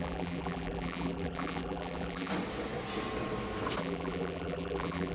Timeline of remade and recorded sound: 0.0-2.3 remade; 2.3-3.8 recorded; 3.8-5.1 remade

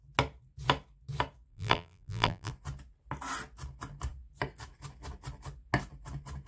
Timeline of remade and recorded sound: 0.0-1.5 recorded; 1.5-2.5 remade; 2.5-6.5 recorded

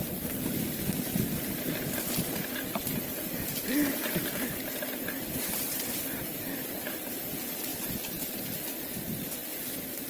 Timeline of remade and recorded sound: 0.0-10.1 recorded

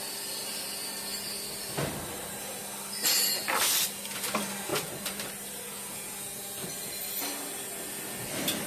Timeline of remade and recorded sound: 0.0-8.7 recorded

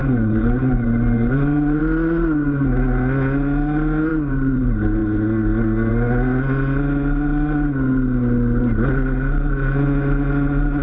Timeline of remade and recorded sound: 0.0-1.8 remade; 1.8-4.1 recorded; 4.1-4.6 remade; 4.6-10.8 recorded